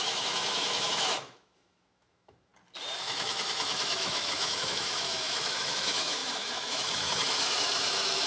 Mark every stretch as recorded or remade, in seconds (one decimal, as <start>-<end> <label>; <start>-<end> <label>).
0.0-2.5 remade; 2.5-3.0 recorded; 3.0-8.3 remade